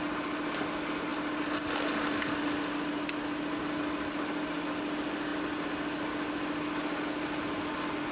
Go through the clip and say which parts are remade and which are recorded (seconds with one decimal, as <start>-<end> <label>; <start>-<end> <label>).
0.0-8.1 recorded